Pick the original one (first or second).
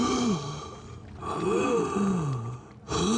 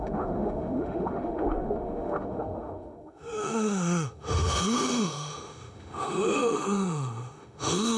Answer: first